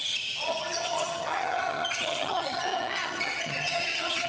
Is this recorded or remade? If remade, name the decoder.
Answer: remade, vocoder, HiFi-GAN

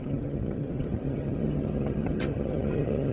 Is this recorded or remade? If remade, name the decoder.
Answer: remade, vocoder, HiFi-GAN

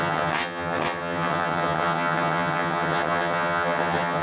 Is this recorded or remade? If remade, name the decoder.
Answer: remade, vocoder, HiFi-GAN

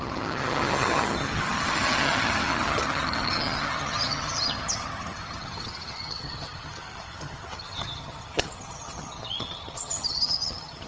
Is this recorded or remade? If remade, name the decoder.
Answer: remade, vocoder, HiFi-GAN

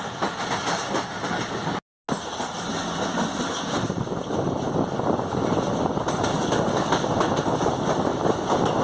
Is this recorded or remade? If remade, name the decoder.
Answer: recorded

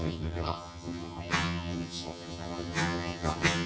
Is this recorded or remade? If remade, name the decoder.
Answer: remade, vocoder, HiFi-GAN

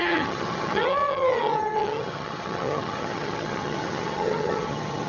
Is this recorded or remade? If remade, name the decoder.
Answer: remade, vocoder, HiFi-GAN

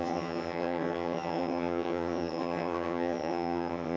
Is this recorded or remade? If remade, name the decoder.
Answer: remade, vocoder, HiFi-GAN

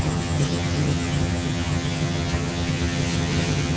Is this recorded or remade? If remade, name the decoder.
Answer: remade, vocoder, HiFi-GAN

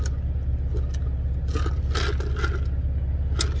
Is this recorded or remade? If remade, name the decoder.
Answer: recorded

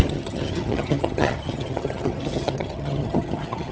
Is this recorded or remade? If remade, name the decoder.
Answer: remade, vocoder, HiFi-GAN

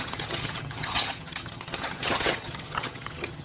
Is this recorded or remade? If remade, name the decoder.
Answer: remade, vocoder, HiFi-GAN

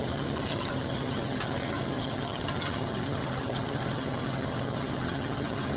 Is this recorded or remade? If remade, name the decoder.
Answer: remade, vocoder, HiFi-GAN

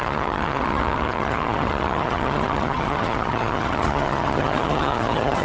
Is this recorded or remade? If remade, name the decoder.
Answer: remade, vocoder, HiFi-GAN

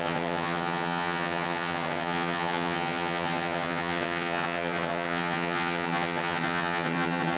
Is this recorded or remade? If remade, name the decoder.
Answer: remade, vocoder, HiFi-GAN